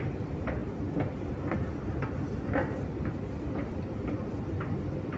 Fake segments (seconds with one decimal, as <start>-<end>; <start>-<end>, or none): none